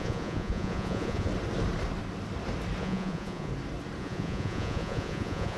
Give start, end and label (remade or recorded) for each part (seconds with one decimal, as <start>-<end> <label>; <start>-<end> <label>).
0.0-1.3 remade; 1.3-2.8 recorded; 2.8-3.5 remade; 3.5-4.0 recorded; 4.0-5.6 remade